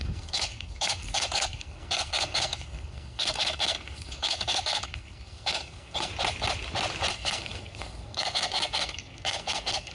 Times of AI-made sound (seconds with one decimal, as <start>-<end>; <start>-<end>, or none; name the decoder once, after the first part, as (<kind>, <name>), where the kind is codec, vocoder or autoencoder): 0.0-6.1 (codec, SNAC); 7.1-9.9